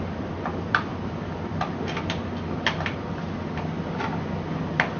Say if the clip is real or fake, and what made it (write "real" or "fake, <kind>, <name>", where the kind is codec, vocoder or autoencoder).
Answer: real